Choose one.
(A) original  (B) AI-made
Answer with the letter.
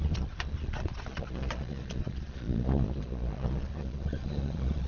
B